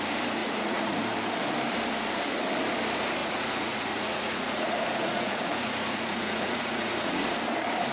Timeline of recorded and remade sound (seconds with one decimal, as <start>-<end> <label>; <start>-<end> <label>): 0.0-0.4 recorded; 0.4-1.0 remade; 1.0-3.2 recorded; 3.2-7.2 remade; 7.2-7.9 recorded